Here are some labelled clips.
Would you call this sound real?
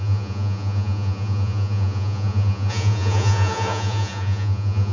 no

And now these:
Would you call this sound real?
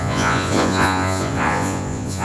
no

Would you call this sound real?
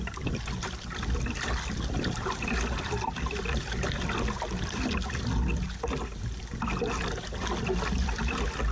yes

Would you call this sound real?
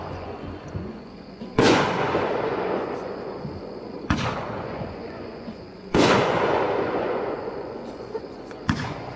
no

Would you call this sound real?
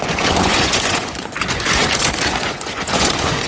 no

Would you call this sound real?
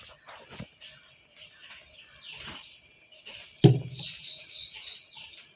yes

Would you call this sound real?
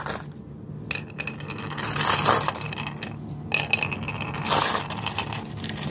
yes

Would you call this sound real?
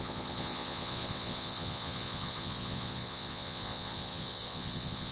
no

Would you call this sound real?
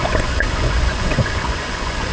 no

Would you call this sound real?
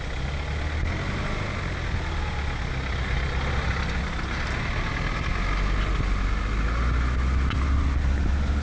yes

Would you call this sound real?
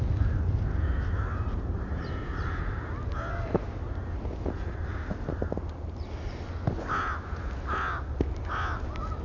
yes